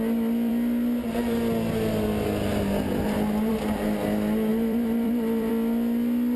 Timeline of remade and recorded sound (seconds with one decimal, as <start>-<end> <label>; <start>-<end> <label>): 0.0-4.5 recorded; 4.5-5.5 remade; 5.5-6.4 recorded